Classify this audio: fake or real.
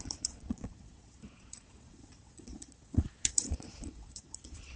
fake